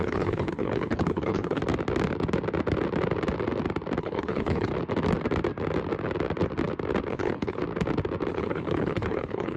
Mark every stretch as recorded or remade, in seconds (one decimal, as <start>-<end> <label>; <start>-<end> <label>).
0.0-1.6 remade; 1.6-4.0 recorded; 4.0-4.7 remade; 4.7-7.1 recorded; 7.1-7.6 remade; 7.6-8.3 recorded; 8.3-9.6 remade